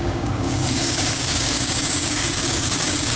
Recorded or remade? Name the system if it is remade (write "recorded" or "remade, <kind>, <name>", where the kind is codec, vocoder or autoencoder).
remade, codec, DAC